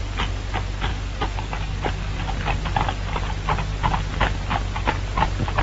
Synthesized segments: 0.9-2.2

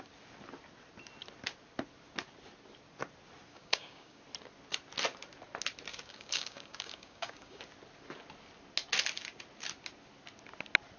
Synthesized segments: 3.5-4.2; 5.9-7.6